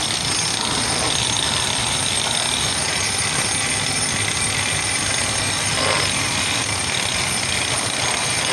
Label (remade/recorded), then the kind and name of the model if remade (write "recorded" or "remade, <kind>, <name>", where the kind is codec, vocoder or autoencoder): remade, vocoder, BigVGAN v2